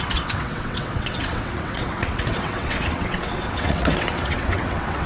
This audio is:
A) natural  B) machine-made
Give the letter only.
B